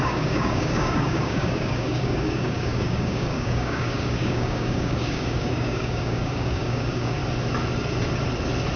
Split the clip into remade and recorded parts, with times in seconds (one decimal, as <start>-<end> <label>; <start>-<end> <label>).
0.0-7.2 remade; 7.2-8.8 recorded